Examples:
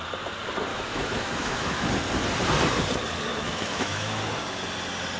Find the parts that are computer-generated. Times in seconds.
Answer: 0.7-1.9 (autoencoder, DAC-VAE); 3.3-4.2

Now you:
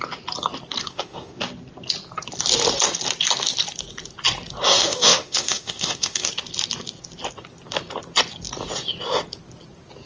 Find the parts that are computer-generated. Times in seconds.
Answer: 0.8-1.4 (autoencoder, DAC-VAE); 4.8-6.3

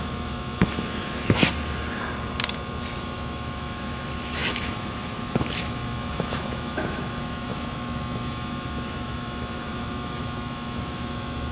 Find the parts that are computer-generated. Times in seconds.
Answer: 0.0-1.4 (autoencoder, DAC-VAE); 3.0-11.5

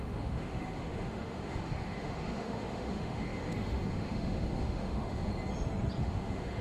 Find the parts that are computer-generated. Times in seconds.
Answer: 0.0-5.3 (autoencoder, DAC-VAE); 6.0-6.6